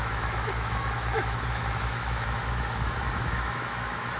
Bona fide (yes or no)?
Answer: no